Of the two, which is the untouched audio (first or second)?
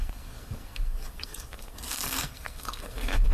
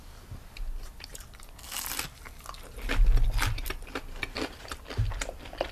second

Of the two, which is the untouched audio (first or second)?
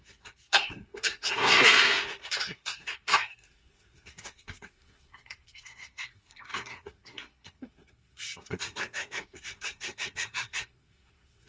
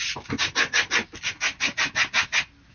second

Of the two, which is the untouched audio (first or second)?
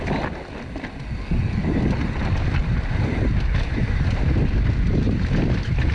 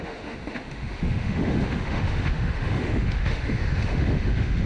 first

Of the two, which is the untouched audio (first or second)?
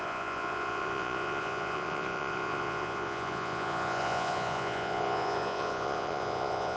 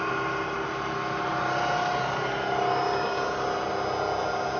second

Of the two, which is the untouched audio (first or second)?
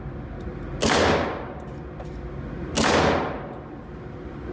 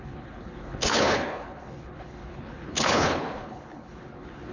first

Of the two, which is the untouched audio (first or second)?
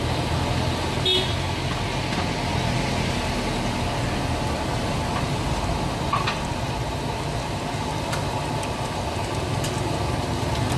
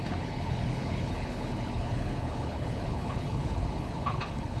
first